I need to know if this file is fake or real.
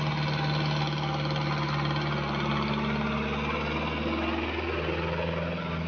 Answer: real